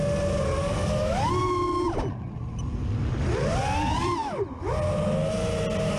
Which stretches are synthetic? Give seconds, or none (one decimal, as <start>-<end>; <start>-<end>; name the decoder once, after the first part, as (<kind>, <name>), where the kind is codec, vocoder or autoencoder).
0.6-1.3 (codec, DAC)